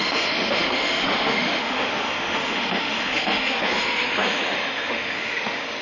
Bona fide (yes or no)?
no